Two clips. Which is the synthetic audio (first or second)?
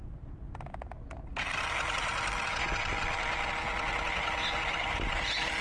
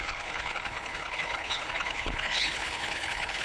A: second